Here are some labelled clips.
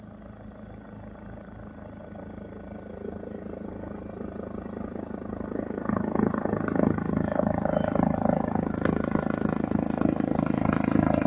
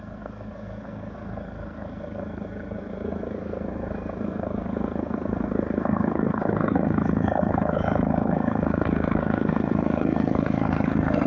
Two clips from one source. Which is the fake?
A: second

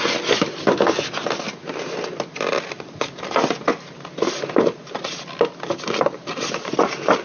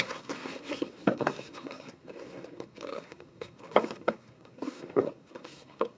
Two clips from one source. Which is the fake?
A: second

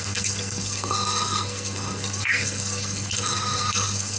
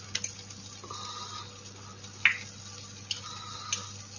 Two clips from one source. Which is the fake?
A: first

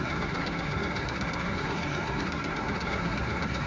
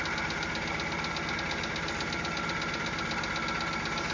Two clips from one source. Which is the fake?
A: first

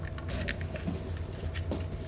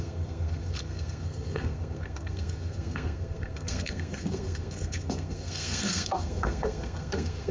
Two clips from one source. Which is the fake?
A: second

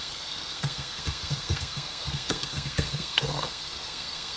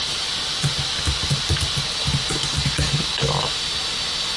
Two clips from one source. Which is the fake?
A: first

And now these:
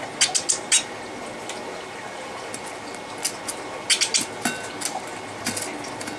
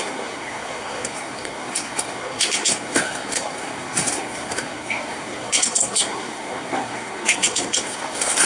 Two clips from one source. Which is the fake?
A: second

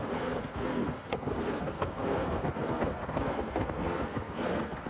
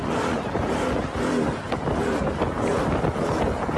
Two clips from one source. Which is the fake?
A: first